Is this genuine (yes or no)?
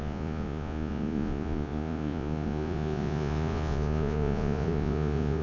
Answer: no